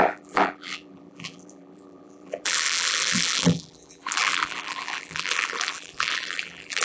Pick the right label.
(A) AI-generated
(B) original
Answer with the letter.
A